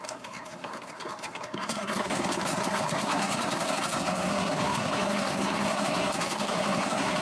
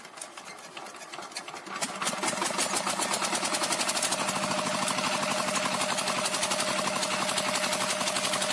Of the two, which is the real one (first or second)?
second